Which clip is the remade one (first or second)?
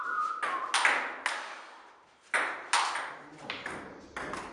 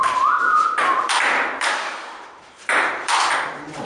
second